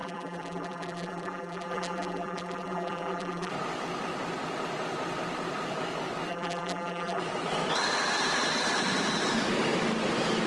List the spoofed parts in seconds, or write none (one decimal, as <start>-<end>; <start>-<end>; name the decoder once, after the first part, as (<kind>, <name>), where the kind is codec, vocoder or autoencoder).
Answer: 0.0-3.5 (vocoder, BigVGAN v2); 6.3-7.2

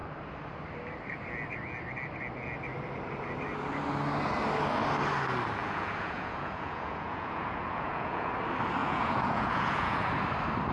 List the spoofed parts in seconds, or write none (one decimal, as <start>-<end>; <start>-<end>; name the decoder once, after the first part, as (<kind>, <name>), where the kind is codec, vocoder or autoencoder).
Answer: 5.6-8.3 (vocoder, Vocos); 8.8-10.1

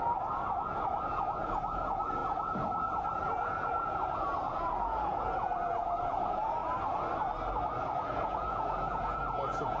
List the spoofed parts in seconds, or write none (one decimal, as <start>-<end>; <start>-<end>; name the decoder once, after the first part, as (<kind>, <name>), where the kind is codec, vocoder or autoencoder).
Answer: 0.0-6.6 (vocoder, Vocos); 7.8-9.8

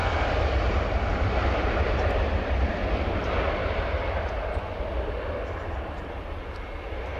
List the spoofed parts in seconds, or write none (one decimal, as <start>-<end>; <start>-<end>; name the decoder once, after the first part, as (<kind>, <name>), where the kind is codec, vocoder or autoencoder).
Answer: 1.1-2.8 (vocoder, BigVGAN v2)

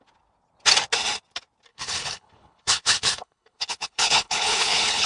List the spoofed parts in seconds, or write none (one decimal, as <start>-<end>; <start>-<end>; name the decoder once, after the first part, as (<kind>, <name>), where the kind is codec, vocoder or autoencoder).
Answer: 1.7-5.1 (codec, HILCodec)

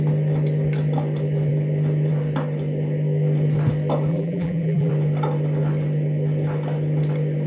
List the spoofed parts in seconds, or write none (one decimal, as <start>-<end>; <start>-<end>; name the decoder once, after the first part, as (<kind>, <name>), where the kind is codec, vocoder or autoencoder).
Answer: 4.1-4.9 (vocoder, BigVGAN v2)